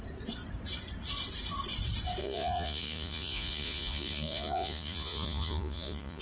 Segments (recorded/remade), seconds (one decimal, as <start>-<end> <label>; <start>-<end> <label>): 0.0-2.2 recorded; 2.2-6.2 remade